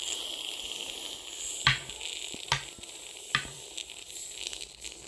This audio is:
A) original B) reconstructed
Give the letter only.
A